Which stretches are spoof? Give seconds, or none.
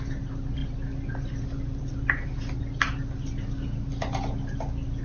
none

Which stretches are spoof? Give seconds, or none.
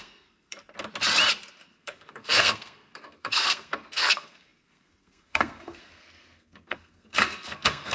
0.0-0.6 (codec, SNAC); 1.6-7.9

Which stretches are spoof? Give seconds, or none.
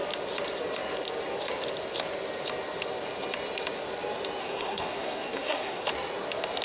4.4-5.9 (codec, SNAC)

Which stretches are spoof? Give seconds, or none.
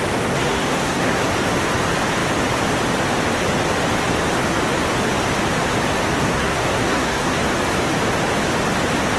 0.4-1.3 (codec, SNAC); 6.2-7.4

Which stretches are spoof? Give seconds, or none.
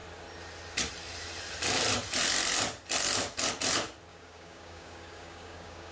4.1-5.9 (codec, DAC)